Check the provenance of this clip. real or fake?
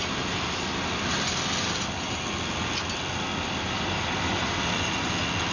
real